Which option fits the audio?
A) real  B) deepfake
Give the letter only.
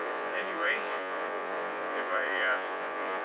B